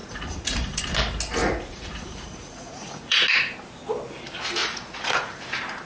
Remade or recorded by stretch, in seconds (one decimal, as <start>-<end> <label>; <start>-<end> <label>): 0.0-0.8 remade; 0.8-1.4 recorded; 1.4-3.2 remade; 3.2-4.6 recorded; 4.6-5.4 remade; 5.4-5.9 recorded